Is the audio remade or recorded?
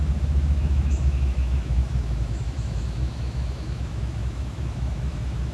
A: remade